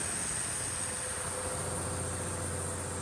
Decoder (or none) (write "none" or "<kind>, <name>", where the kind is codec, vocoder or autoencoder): none